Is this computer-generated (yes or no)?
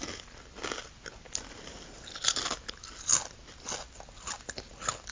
no